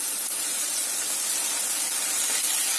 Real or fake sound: real